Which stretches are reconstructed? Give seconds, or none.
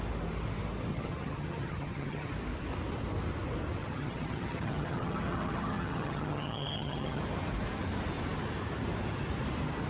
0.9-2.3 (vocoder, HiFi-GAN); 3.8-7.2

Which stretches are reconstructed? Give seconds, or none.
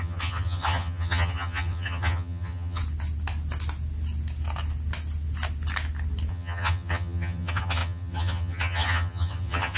0.0-2.8 (vocoder, HiFi-GAN); 6.3-9.8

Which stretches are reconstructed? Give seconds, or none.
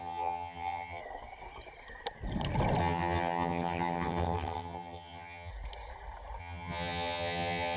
0.0-1.0 (vocoder, HiFi-GAN); 2.8-5.5; 6.4-7.8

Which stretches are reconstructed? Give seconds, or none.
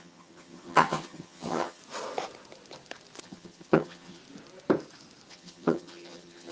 0.0-1.8 (vocoder, HiFi-GAN); 3.2-4.2; 5.3-6.5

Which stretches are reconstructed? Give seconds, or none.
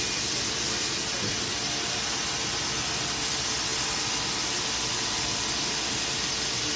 none